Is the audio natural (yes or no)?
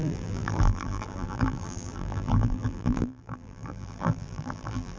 no